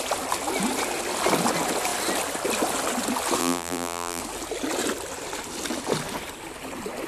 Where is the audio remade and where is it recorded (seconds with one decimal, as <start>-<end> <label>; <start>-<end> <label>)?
0.0-3.4 recorded; 3.4-4.2 remade; 4.2-7.1 recorded